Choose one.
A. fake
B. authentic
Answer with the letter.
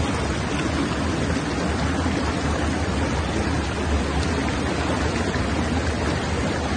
B